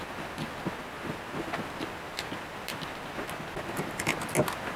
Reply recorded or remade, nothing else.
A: recorded